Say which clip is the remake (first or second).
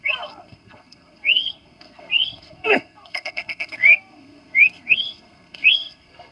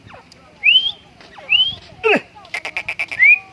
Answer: first